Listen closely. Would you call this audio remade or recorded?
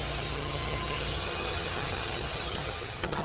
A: remade